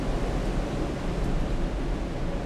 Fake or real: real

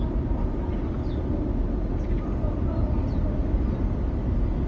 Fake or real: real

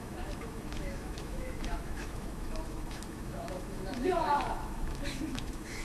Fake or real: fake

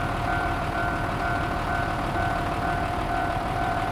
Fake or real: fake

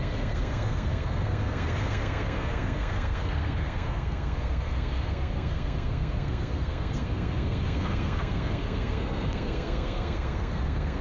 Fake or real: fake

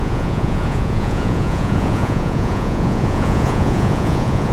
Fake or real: fake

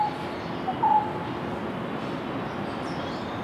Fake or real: real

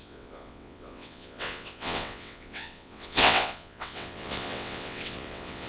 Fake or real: fake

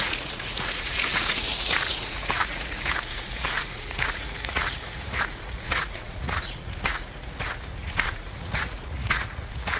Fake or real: fake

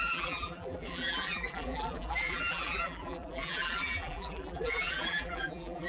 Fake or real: fake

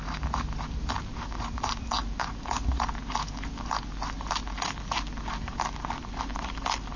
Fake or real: real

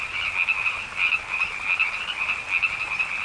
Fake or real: real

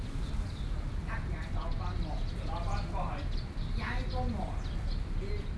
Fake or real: real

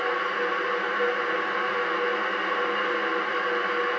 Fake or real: real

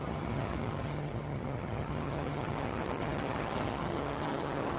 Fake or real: fake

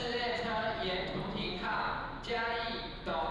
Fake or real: real